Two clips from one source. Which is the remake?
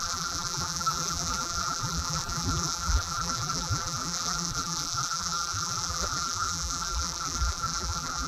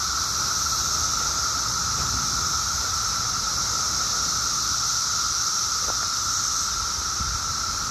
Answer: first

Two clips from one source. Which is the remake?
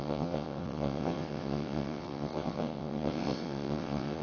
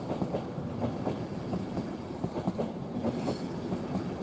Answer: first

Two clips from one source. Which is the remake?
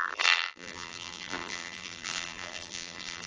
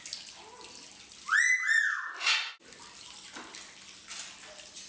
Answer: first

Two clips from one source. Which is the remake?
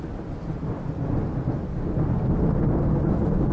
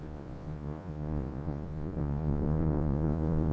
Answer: second